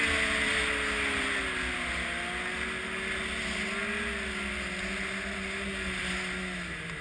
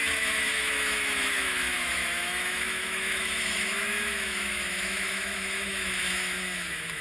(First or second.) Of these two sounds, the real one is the first